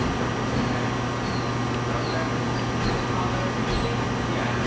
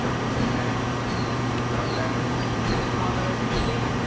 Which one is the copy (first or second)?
second